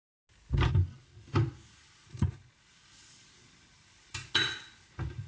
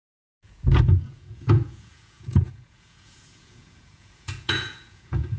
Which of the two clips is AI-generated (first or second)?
second